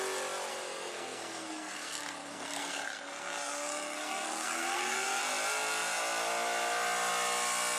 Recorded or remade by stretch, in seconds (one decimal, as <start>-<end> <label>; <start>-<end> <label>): 0.0-0.5 recorded; 0.5-5.2 remade; 5.2-7.8 recorded